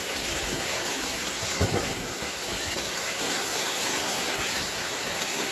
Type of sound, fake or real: fake